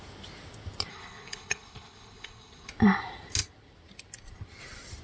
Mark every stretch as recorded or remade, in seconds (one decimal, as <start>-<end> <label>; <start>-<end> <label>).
0.0-0.9 recorded; 0.9-2.7 remade; 2.7-5.0 recorded